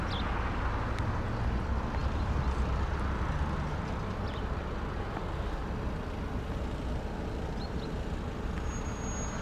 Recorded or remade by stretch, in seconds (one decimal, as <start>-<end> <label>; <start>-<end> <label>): 0.0-9.4 recorded